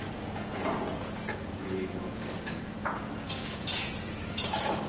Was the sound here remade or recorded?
remade